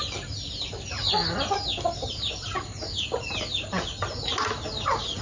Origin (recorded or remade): recorded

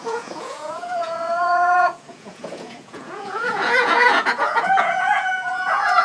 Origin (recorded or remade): remade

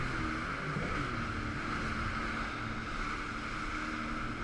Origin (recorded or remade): recorded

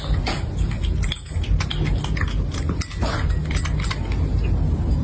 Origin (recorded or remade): recorded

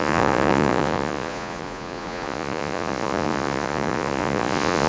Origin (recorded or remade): remade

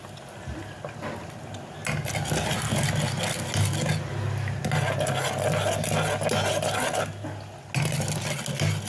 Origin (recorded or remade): recorded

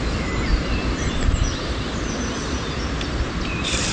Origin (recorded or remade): recorded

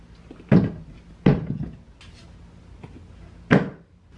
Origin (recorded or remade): recorded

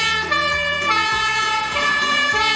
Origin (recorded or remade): remade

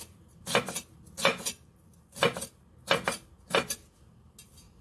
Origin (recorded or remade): recorded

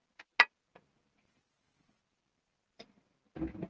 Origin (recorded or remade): recorded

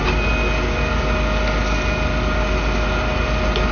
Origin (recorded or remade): recorded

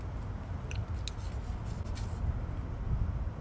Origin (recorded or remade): recorded